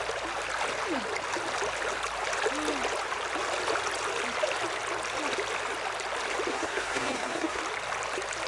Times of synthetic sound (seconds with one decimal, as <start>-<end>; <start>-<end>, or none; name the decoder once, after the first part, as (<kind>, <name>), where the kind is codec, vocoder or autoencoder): 6.5-7.6 (codec, SNAC)